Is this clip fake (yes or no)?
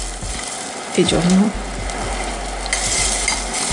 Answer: no